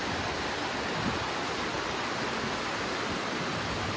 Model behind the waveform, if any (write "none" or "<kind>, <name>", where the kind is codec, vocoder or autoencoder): none